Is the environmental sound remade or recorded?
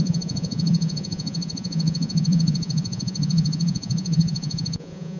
remade